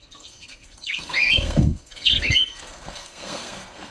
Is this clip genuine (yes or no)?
no